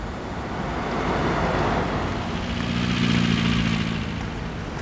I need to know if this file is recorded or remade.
recorded